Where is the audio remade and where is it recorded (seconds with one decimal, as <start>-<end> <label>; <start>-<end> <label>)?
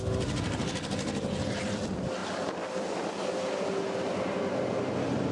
0.0-5.3 recorded